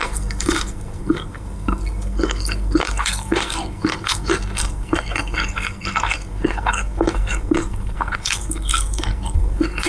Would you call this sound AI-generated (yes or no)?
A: yes